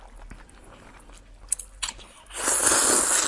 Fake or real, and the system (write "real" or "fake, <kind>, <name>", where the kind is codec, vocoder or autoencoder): real